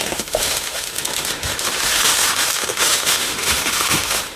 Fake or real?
fake